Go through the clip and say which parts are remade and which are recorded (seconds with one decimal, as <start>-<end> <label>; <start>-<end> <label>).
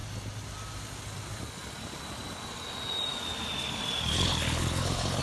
0.0-4.1 recorded; 4.1-5.2 remade